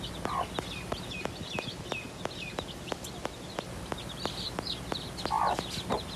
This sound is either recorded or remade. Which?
recorded